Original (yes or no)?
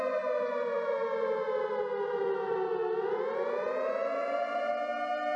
yes